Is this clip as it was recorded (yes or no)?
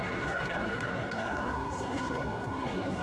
no